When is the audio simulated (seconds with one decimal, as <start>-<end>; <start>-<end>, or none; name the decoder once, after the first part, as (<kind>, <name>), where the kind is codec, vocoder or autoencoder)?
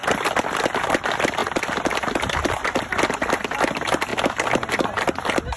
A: 1.4-2.8 (vocoder, BigVGAN v2)